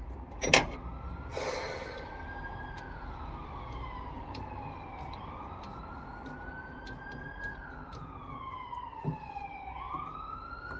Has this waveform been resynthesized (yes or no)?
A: no